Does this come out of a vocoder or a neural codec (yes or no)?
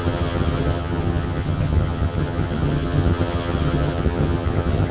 yes